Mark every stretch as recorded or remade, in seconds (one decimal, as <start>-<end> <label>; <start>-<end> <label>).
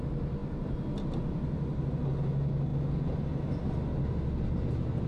0.0-5.1 recorded